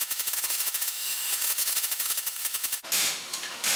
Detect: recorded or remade remade